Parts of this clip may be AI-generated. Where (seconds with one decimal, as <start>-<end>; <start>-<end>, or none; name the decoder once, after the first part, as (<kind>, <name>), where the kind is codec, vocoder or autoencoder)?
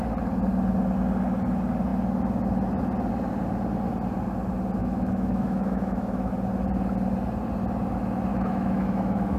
4.8-6.3 (autoencoder, DAC-VAE); 8.3-9.4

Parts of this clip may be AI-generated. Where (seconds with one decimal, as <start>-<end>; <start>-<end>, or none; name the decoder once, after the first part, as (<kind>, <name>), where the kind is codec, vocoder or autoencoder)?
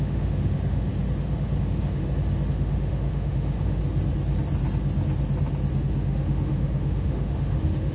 0.0-0.9 (autoencoder, DAC-VAE); 1.6-2.0; 2.5-3.8; 5.8-7.9